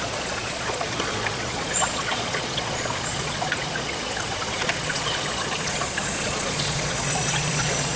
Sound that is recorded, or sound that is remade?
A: remade